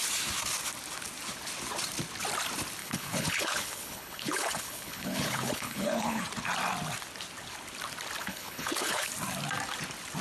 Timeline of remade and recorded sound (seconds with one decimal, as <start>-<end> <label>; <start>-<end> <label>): 0.0-2.8 recorded; 2.8-6.2 remade; 6.2-8.2 recorded; 8.2-9.1 remade; 9.1-10.2 recorded